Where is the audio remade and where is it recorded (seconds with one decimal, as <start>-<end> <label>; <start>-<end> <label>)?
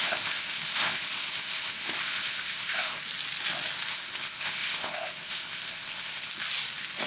0.0-3.0 remade; 3.0-3.9 recorded; 3.9-6.3 remade; 6.3-7.1 recorded